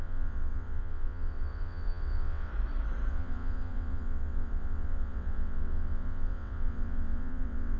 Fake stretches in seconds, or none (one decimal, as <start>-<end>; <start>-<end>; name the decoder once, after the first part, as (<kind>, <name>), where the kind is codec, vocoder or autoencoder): 0.0-2.5 (vocoder, WaveNeXt); 3.1-7.8

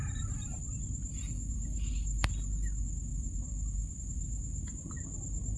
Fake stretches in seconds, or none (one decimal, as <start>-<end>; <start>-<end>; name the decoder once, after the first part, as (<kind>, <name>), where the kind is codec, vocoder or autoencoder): 0.0-0.7 (vocoder, BigVGAN v2); 3.1-3.9